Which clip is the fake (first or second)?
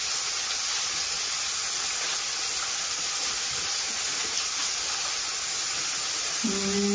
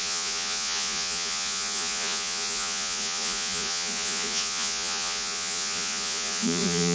second